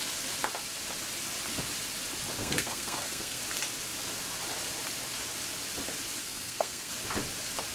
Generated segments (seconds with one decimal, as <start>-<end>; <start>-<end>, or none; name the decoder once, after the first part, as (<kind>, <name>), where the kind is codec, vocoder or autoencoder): 2.4-3.4 (codec, SNAC); 6.2-6.9